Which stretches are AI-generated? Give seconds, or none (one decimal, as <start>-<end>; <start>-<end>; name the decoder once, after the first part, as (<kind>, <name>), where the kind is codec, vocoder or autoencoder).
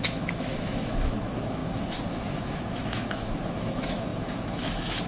0.0-5.1 (autoencoder, DAC-VAE)